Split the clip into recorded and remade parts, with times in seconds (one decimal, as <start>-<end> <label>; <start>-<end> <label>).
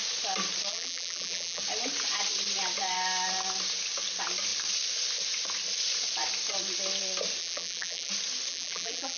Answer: 0.0-0.7 recorded; 0.7-1.6 remade; 1.6-7.4 recorded; 7.4-8.1 remade; 8.1-8.5 recorded; 8.5-9.2 remade